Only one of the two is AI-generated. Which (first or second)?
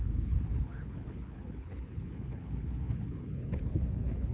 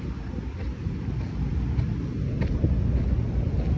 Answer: first